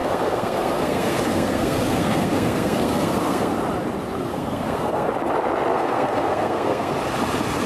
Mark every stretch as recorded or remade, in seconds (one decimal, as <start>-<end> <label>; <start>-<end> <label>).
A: 0.0-3.5 remade; 3.5-4.3 recorded; 4.3-5.1 remade; 5.1-5.7 recorded; 5.7-6.9 remade; 6.9-7.7 recorded